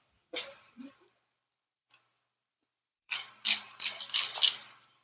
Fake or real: fake